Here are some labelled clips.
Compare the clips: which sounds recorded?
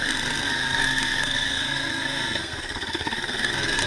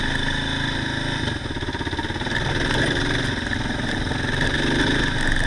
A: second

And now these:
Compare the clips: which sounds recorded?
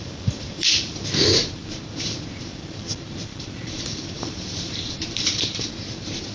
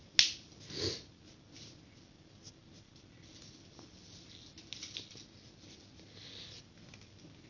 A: second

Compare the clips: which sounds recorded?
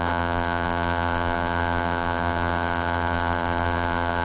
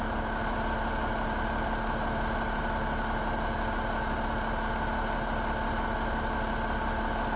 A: second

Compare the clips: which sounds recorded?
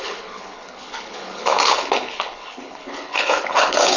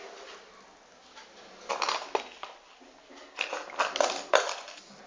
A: second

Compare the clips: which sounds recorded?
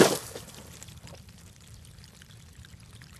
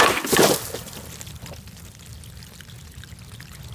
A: second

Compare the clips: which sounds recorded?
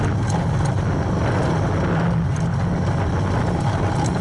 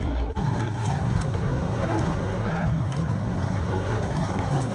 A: first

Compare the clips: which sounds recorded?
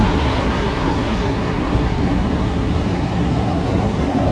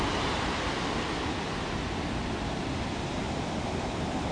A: second